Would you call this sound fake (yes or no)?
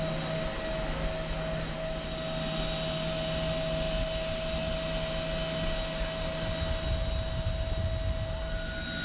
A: no